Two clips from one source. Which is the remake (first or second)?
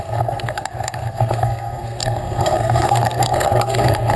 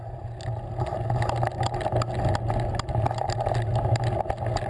first